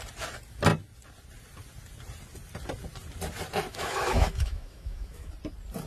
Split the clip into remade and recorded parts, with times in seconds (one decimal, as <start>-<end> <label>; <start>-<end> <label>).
0.0-3.7 recorded; 3.7-5.3 remade; 5.3-5.9 recorded